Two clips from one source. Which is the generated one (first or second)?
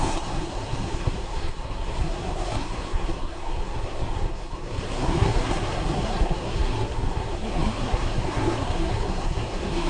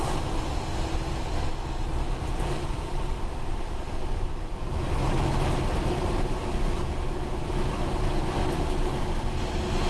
first